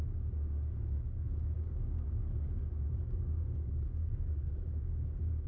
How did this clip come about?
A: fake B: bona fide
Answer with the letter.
A